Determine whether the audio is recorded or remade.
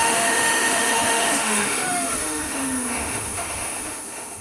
remade